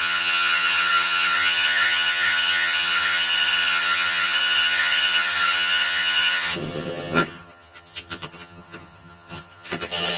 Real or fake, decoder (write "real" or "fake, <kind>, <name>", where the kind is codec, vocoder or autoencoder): fake, vocoder, HiFi-GAN